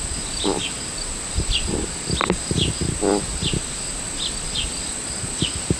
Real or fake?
real